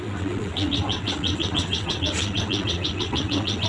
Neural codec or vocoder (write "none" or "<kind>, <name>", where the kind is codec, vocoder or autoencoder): vocoder, WaveNeXt